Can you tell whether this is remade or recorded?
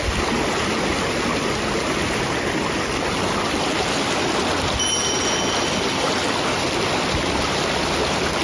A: recorded